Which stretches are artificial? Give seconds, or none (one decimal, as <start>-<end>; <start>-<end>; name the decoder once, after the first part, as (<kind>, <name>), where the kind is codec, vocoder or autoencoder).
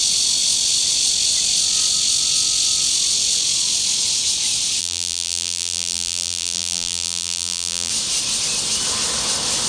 4.8-7.9 (vocoder, BigVGAN v2)